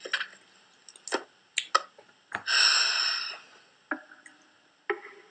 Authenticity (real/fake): real